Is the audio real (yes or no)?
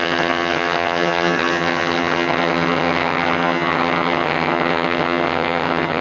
no